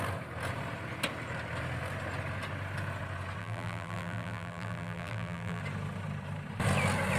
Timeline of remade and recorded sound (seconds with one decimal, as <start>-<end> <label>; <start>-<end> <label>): 0.0-3.4 recorded; 3.4-5.6 remade; 5.6-7.2 recorded